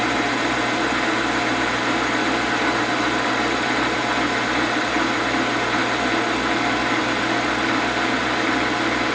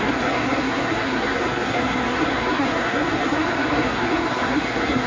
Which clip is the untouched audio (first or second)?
first